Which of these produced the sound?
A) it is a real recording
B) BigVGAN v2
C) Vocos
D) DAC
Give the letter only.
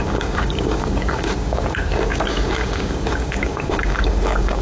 D